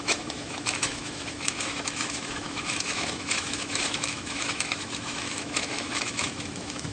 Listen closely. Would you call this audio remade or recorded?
remade